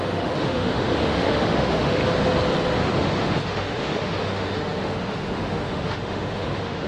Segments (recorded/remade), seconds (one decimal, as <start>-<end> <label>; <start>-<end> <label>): 0.0-2.0 remade; 2.0-2.8 recorded; 2.8-6.9 remade